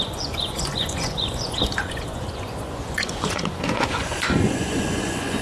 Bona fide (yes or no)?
no